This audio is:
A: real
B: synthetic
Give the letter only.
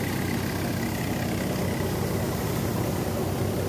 A